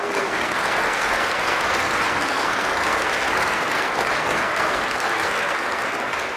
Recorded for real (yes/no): no